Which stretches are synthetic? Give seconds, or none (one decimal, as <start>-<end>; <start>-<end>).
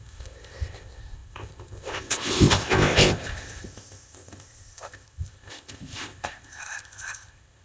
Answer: 0.0-7.6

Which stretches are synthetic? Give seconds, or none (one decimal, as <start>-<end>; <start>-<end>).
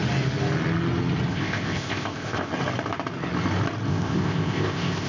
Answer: 1.3-2.5; 3.9-5.1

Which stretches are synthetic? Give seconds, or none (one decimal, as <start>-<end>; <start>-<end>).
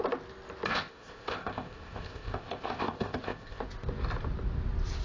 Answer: 0.7-3.6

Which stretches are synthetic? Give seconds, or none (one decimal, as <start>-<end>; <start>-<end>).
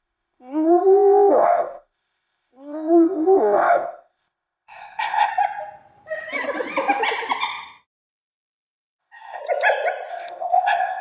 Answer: 0.0-5.3; 9.0-9.4; 10.1-11.0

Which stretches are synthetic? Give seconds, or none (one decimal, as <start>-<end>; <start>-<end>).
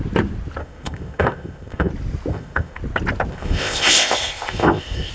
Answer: 0.6-1.9; 2.3-2.8; 3.3-5.1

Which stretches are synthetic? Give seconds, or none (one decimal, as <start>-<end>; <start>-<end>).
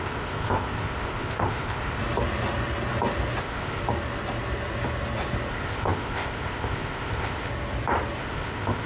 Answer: 0.0-2.0; 3.4-3.8; 5.5-7.5; 8.2-8.9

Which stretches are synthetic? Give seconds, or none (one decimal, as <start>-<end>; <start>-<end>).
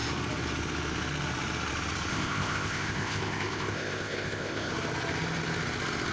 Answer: 2.1-4.7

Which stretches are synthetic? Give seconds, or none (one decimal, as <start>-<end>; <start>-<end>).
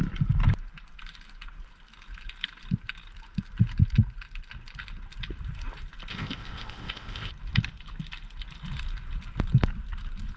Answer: 6.1-7.3